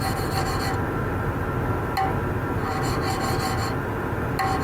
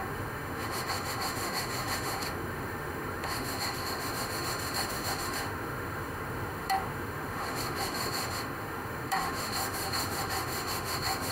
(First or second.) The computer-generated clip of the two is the second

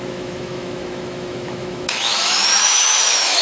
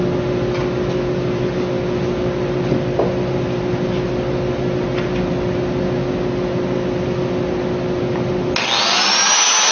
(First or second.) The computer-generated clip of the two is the first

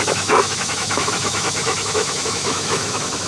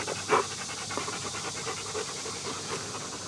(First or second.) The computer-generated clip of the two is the first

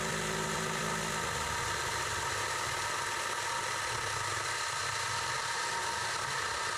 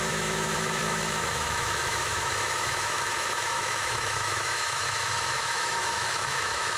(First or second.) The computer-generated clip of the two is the second